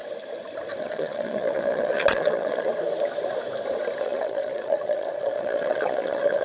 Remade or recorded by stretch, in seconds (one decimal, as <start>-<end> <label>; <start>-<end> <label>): 0.0-0.8 recorded; 0.8-2.7 remade; 2.7-4.0 recorded; 4.0-6.4 remade